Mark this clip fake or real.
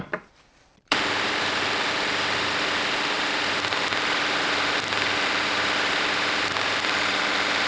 fake